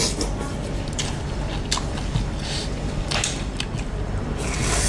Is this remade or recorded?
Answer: recorded